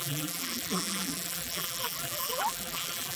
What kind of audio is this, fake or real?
fake